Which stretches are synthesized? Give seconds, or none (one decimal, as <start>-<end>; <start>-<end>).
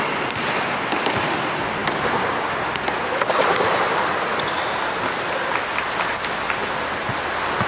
none